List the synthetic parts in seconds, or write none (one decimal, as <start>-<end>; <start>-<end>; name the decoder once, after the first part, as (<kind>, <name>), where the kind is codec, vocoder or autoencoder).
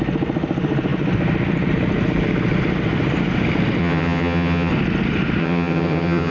3.8-4.7 (vocoder, HiFi-GAN); 5.4-6.3